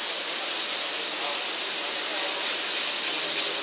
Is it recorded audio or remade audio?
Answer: recorded